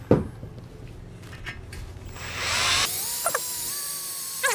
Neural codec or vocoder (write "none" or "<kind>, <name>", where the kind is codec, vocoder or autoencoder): none